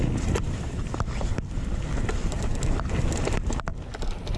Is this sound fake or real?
real